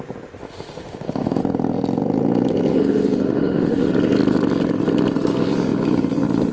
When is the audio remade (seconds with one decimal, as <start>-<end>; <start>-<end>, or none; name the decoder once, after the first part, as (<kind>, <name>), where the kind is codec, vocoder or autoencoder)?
0.4-1.4 (autoencoder, DAC-VAE); 2.7-3.9